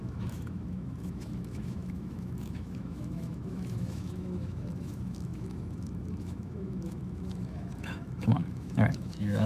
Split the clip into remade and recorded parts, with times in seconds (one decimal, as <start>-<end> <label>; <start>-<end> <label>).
0.0-9.5 remade